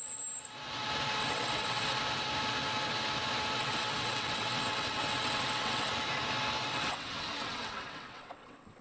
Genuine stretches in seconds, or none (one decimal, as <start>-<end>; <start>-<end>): 0.0-1.2; 2.0-3.6; 5.9-6.7